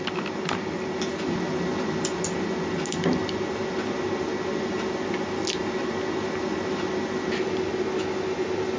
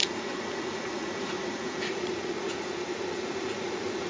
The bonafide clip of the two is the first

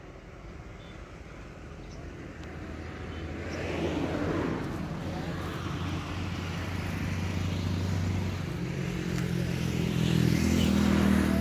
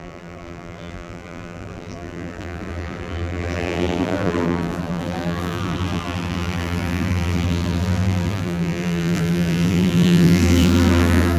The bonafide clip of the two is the first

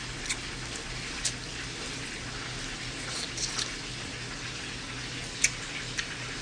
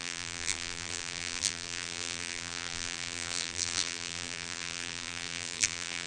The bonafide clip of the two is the first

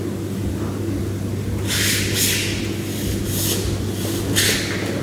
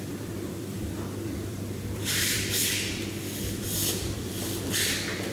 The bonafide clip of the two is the first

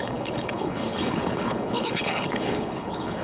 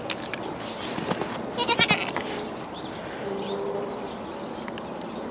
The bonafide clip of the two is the second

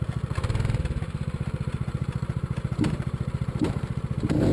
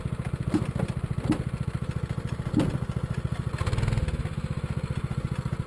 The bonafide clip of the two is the second